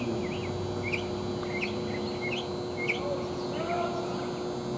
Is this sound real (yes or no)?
yes